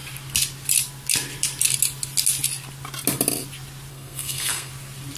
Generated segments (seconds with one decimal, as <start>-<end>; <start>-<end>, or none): 3.9-4.7